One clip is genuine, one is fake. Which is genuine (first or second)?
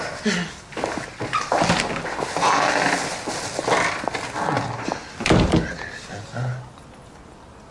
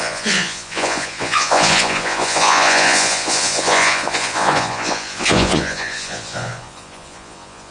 first